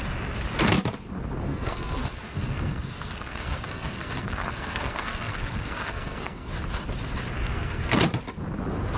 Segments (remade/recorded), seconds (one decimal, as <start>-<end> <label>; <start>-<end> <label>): 0.0-1.5 recorded; 1.5-6.5 remade; 6.5-7.4 recorded; 7.4-8.0 remade; 8.0-9.0 recorded